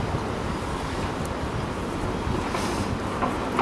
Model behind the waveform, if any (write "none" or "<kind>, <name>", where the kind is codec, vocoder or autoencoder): none